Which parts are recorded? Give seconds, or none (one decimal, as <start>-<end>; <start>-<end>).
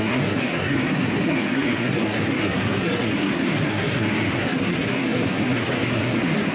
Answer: none